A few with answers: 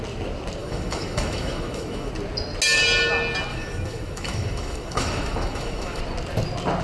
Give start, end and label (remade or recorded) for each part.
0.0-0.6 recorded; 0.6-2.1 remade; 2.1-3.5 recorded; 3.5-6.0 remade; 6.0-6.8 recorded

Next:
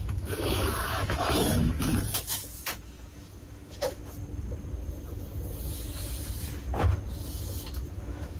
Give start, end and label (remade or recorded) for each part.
0.0-4.0 remade; 4.0-7.9 recorded; 7.9-8.4 remade

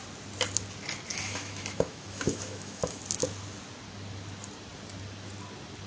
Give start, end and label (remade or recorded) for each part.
0.0-1.1 recorded; 1.1-3.0 remade; 3.0-5.9 recorded

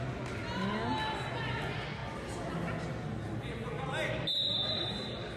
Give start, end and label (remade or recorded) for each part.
0.0-5.4 recorded